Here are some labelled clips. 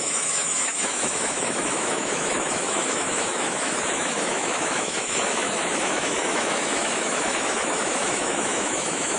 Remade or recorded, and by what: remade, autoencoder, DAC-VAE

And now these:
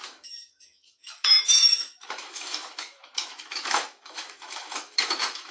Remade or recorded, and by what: remade, autoencoder, DAC-VAE